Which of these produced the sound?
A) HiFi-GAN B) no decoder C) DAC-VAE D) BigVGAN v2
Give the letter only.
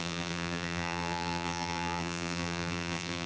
D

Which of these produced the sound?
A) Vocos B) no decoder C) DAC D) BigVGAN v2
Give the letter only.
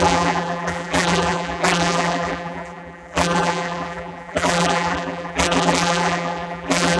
D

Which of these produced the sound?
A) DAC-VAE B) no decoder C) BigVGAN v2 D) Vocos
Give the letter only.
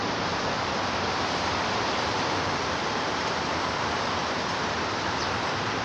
C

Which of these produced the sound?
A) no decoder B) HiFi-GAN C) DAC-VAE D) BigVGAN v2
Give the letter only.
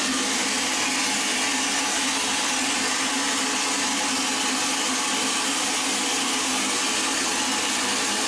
A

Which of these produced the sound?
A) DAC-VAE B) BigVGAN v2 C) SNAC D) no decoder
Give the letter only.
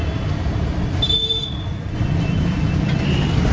B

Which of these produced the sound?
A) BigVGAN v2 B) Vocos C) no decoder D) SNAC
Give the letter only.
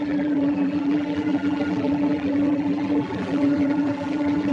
A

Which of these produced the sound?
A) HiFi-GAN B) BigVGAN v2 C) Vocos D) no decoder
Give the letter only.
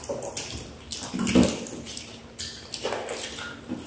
D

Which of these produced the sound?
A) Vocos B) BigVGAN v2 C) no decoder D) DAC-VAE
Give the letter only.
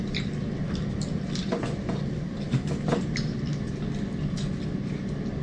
C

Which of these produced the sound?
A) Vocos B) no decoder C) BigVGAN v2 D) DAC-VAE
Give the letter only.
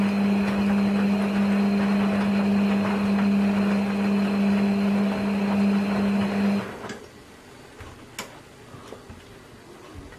B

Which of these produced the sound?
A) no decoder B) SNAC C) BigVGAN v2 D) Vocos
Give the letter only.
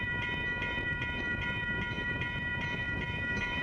C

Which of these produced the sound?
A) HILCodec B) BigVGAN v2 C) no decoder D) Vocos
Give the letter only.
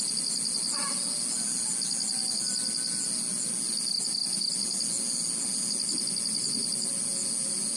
C